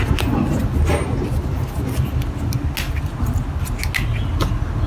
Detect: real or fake real